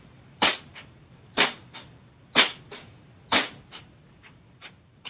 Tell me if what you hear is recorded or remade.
remade